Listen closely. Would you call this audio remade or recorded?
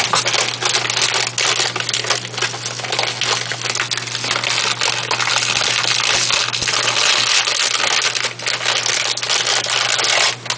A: recorded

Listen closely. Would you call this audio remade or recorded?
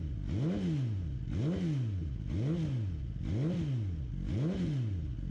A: recorded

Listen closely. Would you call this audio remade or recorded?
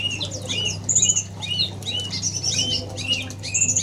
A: recorded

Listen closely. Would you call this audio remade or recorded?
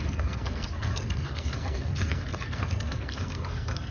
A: remade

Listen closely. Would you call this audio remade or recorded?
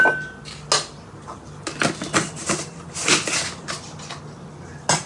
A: recorded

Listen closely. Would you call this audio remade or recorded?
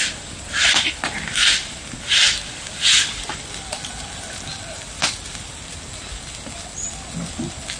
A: recorded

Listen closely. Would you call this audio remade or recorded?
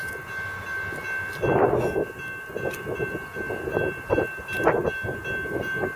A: recorded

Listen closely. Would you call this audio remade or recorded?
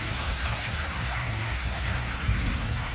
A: remade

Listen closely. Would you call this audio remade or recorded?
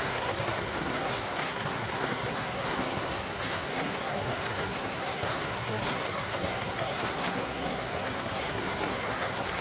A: remade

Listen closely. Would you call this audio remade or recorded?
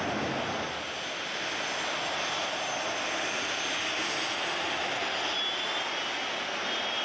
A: recorded